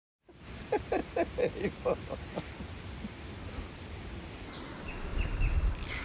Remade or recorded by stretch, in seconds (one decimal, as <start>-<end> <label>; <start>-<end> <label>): 0.0-1.0 remade; 1.0-4.6 recorded; 4.6-5.1 remade; 5.1-6.0 recorded